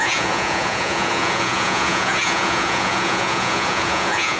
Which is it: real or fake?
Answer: fake